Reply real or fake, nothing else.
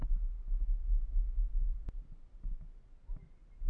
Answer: real